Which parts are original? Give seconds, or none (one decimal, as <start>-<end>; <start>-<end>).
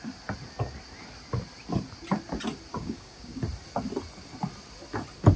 0.0-2.7; 3.4-5.4